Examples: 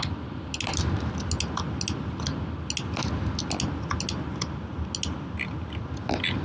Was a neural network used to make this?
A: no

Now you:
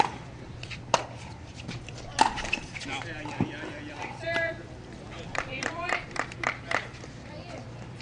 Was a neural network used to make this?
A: yes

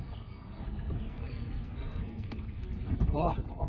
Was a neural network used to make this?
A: yes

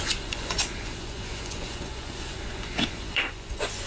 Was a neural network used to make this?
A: yes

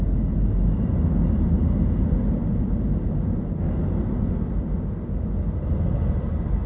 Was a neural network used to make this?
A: no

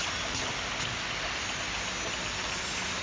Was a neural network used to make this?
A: no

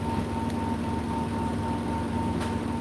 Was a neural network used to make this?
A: no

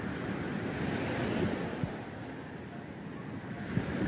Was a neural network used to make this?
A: no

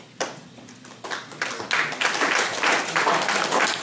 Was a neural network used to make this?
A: no